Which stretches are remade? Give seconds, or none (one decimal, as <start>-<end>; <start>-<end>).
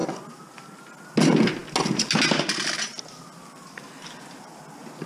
none